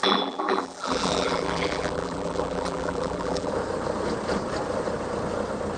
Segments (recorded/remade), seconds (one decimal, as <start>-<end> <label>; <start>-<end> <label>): 0.0-3.5 remade; 3.5-5.8 recorded